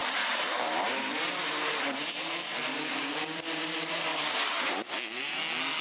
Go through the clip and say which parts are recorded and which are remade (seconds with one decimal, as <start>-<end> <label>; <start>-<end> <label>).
0.0-4.1 remade; 4.1-5.8 recorded